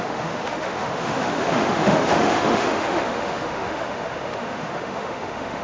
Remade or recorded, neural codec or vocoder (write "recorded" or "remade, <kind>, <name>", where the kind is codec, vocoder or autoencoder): remade, autoencoder, DAC-VAE